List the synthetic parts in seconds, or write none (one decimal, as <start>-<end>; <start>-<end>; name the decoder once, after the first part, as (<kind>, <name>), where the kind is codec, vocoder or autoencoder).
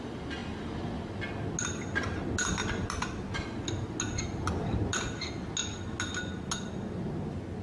none